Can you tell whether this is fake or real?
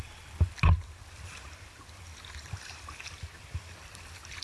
real